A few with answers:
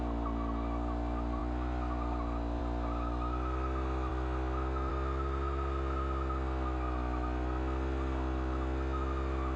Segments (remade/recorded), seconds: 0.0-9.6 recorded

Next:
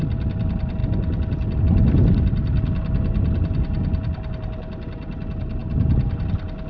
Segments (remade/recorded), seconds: 0.0-6.7 recorded

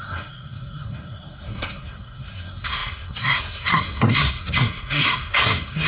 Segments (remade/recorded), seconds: 0.0-5.9 remade